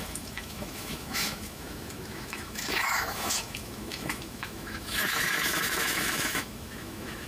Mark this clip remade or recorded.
remade